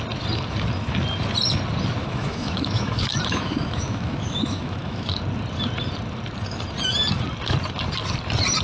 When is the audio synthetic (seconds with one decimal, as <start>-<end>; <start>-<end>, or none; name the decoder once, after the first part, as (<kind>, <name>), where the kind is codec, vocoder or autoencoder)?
2.0-5.2 (autoencoder, DAC-VAE)